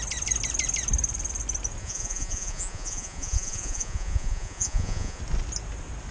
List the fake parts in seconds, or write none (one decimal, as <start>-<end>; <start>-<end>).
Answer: 1.8-5.2